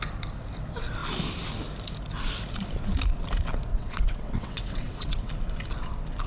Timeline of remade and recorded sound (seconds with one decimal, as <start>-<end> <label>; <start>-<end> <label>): 0.0-3.7 recorded; 3.7-5.3 remade; 5.3-6.3 recorded